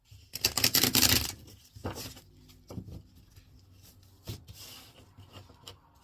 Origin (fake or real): real